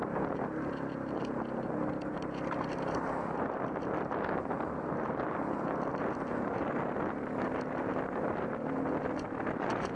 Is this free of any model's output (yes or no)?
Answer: yes